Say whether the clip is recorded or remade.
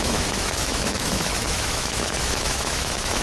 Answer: remade